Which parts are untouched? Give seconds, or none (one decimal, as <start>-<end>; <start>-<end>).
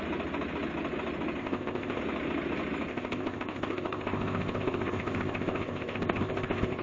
0.0-1.4; 2.0-2.9